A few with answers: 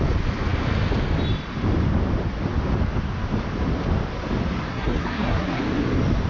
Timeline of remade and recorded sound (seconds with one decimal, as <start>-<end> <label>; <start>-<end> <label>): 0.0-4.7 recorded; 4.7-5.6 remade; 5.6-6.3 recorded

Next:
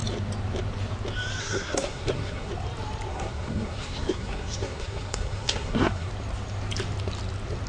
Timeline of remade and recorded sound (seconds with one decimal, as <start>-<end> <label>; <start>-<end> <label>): 0.0-1.4 recorded; 1.4-2.5 remade; 2.5-3.1 recorded; 3.1-6.1 remade; 6.1-7.7 recorded

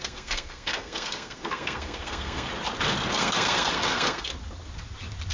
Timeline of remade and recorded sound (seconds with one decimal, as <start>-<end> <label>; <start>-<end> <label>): 0.0-2.5 remade; 2.5-3.1 recorded; 3.1-4.3 remade; 4.3-5.3 recorded

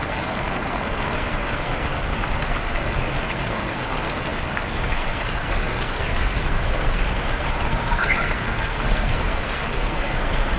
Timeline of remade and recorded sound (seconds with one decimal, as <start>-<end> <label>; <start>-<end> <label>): 0.0-10.6 remade